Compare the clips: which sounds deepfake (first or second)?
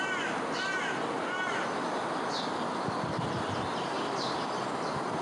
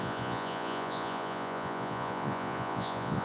second